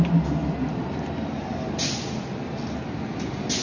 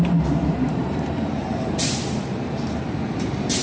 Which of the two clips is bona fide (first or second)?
first